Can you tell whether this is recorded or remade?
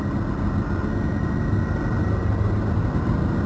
recorded